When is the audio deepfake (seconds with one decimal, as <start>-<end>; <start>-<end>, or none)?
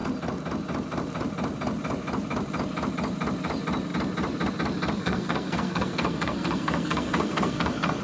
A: 5.0-8.0